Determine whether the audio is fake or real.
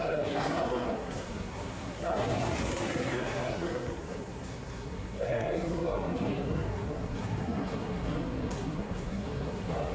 fake